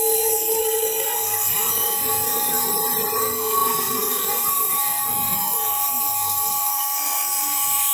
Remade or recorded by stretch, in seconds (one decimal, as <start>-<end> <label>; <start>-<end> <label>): 0.0-2.7 remade; 2.7-3.2 recorded; 3.2-7.9 remade